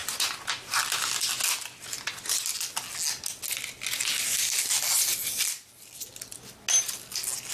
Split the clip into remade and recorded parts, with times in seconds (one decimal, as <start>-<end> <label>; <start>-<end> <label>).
0.0-0.8 remade; 0.8-7.5 recorded